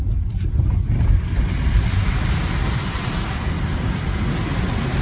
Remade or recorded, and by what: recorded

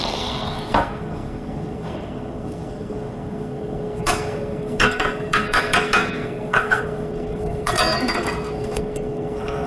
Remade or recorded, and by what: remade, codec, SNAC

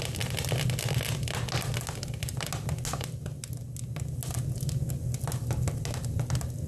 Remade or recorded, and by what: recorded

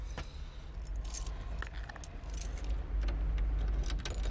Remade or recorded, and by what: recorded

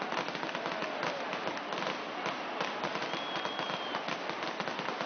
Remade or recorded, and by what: recorded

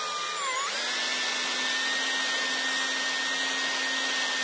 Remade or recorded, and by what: recorded